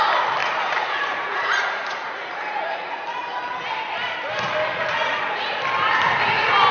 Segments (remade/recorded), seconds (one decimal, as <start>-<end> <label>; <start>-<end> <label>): 0.0-0.4 recorded; 0.4-3.2 remade; 3.2-4.7 recorded; 4.7-5.5 remade; 5.5-6.7 recorded